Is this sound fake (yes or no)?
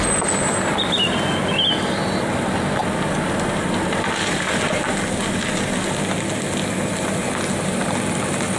no